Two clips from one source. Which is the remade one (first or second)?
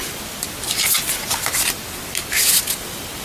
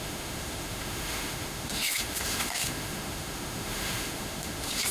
second